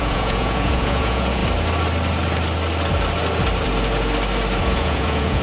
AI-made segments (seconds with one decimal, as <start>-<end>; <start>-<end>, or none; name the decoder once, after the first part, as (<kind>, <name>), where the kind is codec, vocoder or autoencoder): 0.0-1.4 (vocoder, Vocos); 4.6-5.4